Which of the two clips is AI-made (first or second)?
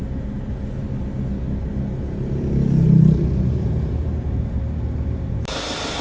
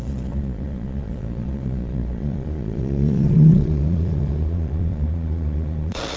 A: second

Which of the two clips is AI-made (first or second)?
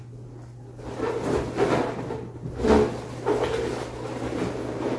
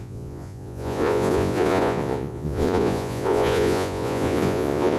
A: second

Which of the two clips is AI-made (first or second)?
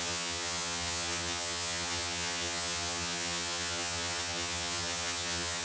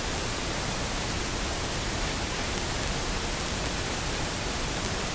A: first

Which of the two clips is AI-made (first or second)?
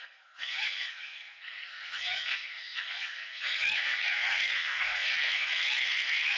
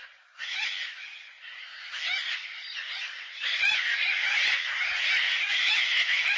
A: first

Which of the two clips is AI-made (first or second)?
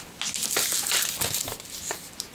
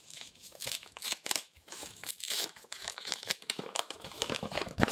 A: second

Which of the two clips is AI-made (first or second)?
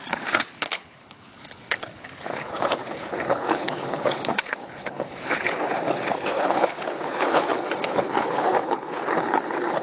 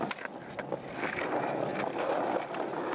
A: first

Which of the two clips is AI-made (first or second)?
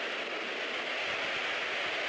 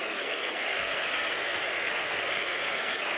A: second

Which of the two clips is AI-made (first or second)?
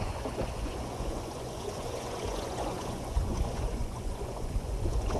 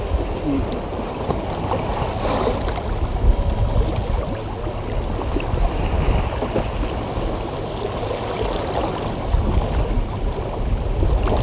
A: first